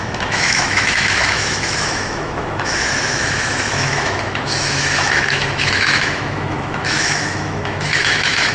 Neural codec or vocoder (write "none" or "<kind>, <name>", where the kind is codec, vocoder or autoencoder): autoencoder, DAC-VAE